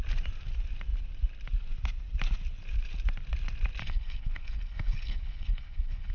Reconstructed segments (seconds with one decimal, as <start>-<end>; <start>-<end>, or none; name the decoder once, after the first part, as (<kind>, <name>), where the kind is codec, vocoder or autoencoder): 3.8-6.1 (codec, HILCodec)